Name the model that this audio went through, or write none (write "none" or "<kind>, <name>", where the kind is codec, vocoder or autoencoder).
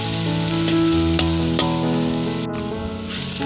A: none